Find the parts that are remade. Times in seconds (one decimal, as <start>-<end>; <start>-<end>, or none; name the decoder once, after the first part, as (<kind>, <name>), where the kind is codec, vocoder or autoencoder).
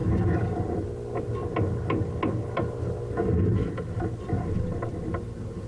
none